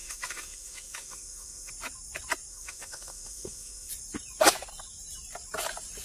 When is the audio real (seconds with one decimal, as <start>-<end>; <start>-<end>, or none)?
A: 1.7-2.5; 3.9-6.0